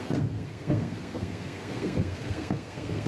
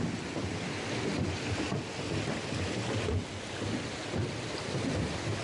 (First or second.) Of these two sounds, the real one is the second